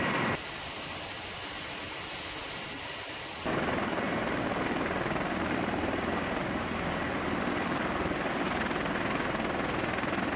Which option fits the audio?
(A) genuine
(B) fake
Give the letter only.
A